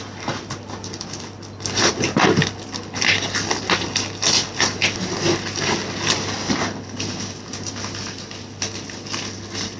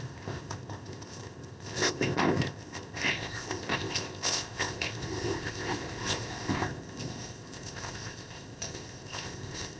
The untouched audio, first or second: first